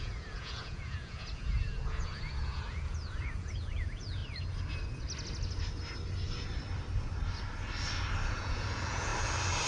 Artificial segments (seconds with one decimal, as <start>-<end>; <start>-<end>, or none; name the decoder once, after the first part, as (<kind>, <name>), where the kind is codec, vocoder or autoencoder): 0.0-4.2 (vocoder, Vocos); 8.3-9.1

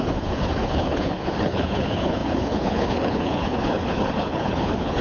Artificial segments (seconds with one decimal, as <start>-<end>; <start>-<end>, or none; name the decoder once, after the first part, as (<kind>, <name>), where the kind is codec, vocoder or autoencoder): 0.0-5.0 (codec, HILCodec)

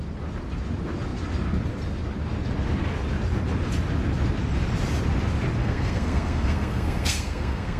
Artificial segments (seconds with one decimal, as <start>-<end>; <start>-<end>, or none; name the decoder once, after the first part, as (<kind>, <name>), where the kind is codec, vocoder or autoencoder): 5.6-7.8 (codec, SNAC)

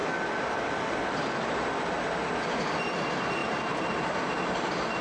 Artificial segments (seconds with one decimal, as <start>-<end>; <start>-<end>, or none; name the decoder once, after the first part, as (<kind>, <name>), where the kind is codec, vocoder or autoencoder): 3.4-4.0 (vocoder, BigVGAN v2)

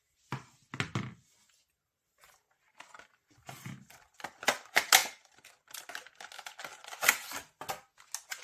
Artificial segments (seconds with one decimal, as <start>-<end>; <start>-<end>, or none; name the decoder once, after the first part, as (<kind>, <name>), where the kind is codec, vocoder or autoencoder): 5.0-5.9 (vocoder, BigVGAN v2)

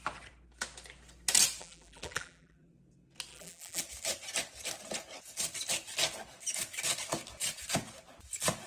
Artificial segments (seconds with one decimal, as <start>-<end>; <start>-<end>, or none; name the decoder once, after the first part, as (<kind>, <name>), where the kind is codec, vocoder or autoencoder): 1.6-2.7 (vocoder, BigVGAN v2); 3.3-3.8

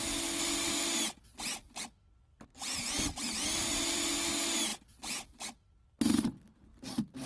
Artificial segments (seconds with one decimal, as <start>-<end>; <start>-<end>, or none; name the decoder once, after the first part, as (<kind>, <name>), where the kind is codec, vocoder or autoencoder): 2.3-4.1 (vocoder, BigVGAN v2); 4.7-6.0; 6.7-7.3

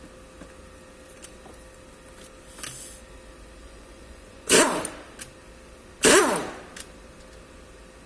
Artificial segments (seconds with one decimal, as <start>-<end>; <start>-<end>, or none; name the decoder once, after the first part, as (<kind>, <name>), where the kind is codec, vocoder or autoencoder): 3.6-4.8 (vocoder, Vocos)